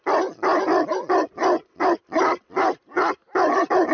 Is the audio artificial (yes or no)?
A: no